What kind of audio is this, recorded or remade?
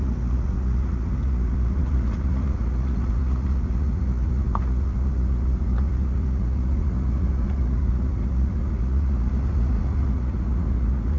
remade